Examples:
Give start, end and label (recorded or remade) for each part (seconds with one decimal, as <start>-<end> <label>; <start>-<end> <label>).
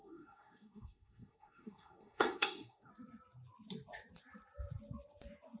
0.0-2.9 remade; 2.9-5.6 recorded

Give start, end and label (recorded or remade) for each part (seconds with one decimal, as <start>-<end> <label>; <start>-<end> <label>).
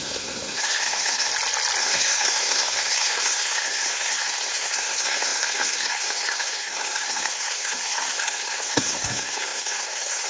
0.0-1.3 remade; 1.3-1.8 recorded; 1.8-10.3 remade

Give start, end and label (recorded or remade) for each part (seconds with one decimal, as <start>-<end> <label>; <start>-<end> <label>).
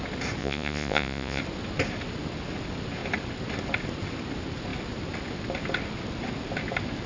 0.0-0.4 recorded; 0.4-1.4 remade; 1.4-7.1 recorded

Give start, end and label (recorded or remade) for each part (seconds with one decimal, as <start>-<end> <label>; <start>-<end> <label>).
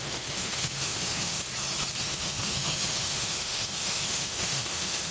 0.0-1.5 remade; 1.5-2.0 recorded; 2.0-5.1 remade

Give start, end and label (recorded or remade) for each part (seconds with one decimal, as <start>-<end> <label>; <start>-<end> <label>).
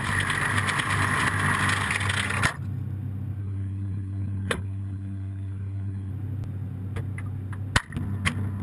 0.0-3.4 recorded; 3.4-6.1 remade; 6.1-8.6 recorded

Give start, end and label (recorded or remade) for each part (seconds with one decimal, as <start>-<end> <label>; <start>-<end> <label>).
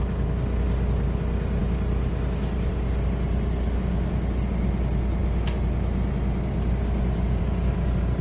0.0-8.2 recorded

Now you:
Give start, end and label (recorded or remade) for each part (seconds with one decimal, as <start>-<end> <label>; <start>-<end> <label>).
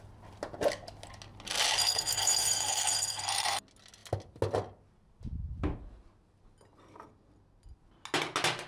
0.0-1.8 recorded; 1.8-3.6 remade; 3.6-8.7 recorded